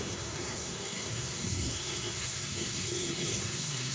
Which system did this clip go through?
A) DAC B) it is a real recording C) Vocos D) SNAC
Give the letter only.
D